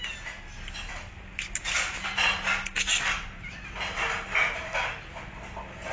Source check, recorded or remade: recorded